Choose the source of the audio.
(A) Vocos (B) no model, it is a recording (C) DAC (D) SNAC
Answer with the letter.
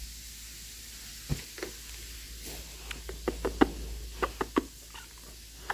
B